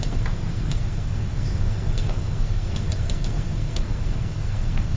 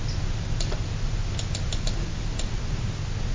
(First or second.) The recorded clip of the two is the second